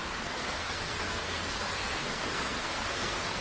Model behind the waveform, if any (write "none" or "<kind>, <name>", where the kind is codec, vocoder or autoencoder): codec, SNAC